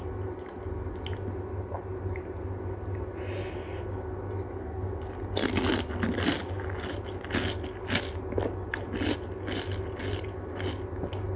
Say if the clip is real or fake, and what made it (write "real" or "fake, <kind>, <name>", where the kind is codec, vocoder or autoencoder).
real